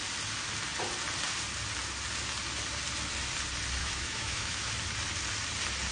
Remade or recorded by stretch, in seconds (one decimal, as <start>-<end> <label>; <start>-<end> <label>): 0.0-3.8 recorded; 3.8-4.7 remade; 4.7-5.9 recorded